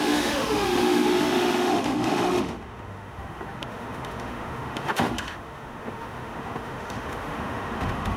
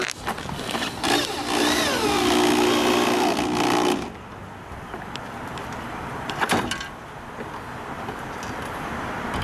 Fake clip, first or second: first